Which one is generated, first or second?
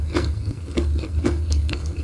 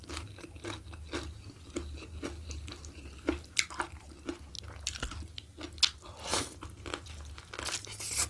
first